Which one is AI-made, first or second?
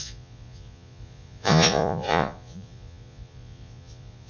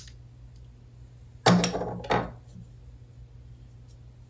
first